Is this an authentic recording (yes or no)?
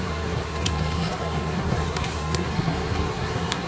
no